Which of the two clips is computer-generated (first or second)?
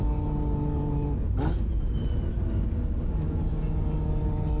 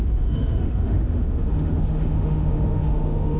second